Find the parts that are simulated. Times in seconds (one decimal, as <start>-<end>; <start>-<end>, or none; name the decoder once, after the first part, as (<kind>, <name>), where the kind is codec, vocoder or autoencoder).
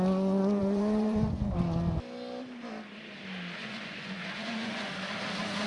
0.6-1.6 (vocoder, Vocos); 3.6-4.9